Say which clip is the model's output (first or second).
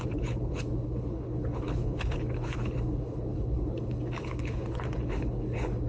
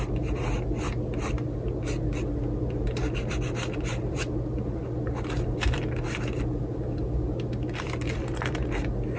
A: first